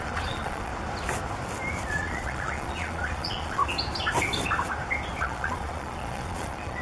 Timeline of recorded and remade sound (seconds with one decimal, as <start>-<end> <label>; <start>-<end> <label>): 0.0-0.7 remade; 0.7-1.9 recorded; 1.9-3.6 remade; 3.6-5.2 recorded; 5.2-6.8 remade